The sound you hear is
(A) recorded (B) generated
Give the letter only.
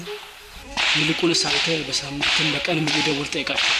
B